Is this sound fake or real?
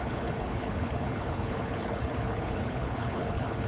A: fake